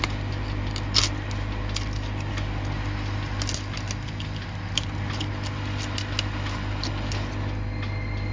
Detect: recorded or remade recorded